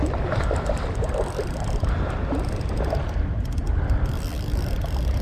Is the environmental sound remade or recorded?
recorded